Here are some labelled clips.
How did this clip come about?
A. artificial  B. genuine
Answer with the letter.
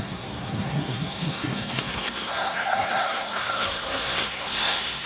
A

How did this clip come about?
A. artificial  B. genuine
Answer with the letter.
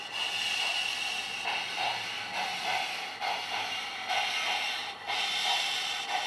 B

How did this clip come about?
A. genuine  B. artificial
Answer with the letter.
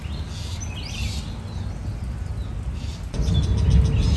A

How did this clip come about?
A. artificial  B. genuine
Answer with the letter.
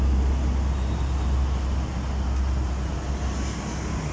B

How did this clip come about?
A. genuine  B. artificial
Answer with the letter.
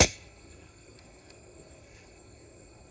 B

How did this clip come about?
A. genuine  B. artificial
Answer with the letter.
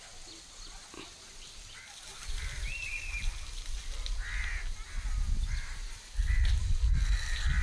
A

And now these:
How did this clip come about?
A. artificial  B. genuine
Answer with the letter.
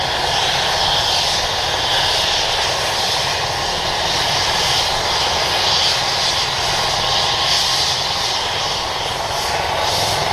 B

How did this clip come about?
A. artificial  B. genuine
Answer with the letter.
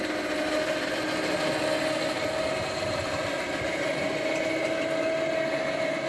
B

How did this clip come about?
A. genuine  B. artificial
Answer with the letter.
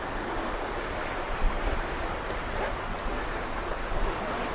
A